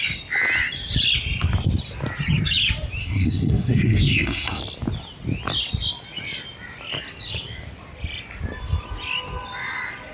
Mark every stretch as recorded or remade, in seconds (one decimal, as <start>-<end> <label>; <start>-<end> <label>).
0.0-3.0 recorded; 3.0-4.6 remade; 4.6-10.1 recorded